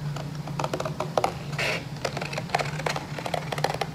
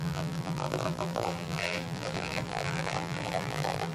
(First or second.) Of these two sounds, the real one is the first